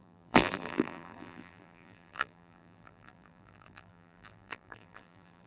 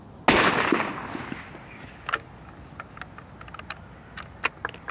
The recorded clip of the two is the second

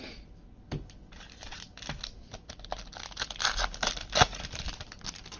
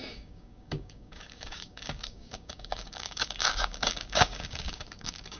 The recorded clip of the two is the first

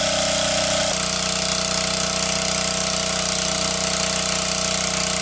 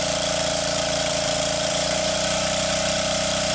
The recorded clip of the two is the first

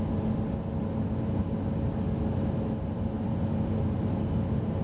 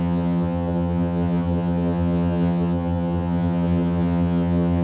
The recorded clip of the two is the first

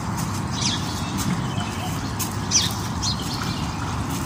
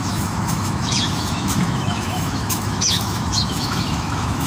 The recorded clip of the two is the first